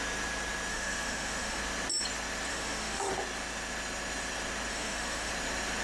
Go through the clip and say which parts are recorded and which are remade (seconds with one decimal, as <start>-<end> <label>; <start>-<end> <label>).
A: 0.0-0.7 recorded; 0.7-1.6 remade; 1.6-2.5 recorded; 2.5-3.1 remade; 3.1-4.7 recorded; 4.7-5.3 remade; 5.3-5.8 recorded